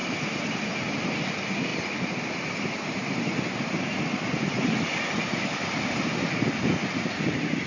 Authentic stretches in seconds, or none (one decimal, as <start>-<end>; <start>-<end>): 0.0-7.7